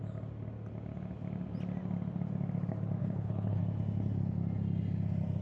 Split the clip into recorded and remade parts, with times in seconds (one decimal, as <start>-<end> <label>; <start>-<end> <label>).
0.0-3.0 recorded; 3.0-3.6 remade; 3.6-5.4 recorded